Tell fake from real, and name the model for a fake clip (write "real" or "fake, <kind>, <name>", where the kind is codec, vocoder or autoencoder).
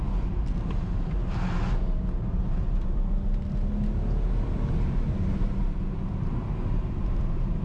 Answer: real